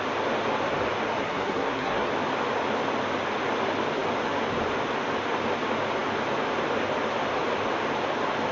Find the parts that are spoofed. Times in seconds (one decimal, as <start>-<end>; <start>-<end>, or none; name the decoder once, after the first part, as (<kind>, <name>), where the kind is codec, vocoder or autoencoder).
1.2-2.1 (codec, SNAC)